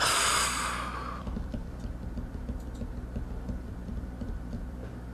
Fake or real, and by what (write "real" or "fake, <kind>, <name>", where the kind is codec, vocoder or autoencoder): fake, vocoder, BigVGAN v2